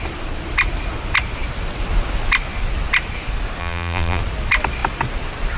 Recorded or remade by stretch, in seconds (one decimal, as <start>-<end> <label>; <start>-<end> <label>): 0.0-3.6 recorded; 3.6-4.2 remade; 4.2-5.6 recorded